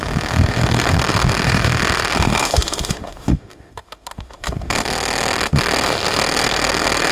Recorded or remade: remade